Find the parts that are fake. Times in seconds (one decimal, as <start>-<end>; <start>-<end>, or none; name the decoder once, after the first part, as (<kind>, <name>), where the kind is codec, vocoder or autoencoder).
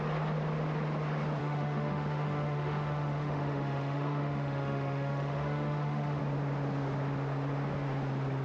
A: 1.4-6.2 (autoencoder, DAC-VAE)